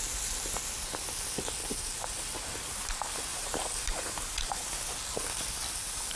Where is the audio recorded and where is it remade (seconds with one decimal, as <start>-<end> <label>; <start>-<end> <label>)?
0.0-3.3 recorded; 3.3-4.9 remade; 4.9-6.2 recorded